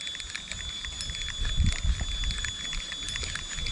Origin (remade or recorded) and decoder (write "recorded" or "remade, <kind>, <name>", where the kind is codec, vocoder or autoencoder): recorded